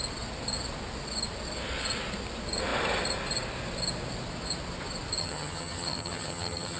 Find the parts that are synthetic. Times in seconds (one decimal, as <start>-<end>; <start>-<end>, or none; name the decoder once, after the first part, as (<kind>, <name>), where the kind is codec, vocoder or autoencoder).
5.2-6.8 (vocoder, HiFi-GAN)